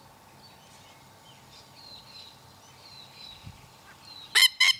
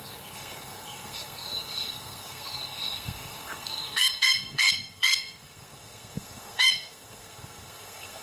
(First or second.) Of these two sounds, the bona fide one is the first